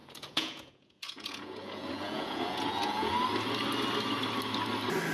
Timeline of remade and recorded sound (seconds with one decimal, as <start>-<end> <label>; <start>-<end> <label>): 0.0-3.1 remade; 3.1-5.1 recorded